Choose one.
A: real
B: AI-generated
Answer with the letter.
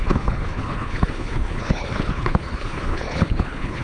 B